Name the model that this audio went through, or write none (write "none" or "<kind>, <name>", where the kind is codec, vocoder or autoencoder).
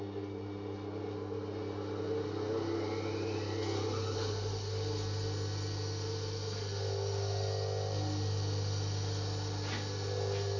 none